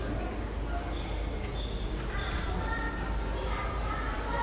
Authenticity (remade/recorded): recorded